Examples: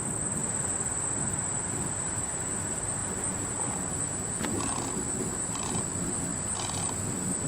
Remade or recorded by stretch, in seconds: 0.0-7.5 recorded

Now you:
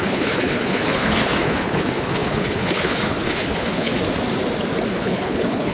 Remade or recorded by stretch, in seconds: 0.0-3.9 remade; 3.9-4.9 recorded; 4.9-5.7 remade

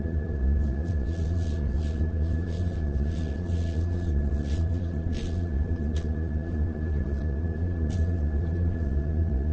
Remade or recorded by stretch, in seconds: 0.0-9.5 remade

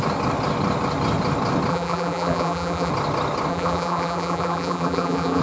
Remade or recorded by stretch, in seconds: 0.0-1.7 recorded; 1.7-2.9 remade; 2.9-3.5 recorded; 3.5-5.4 remade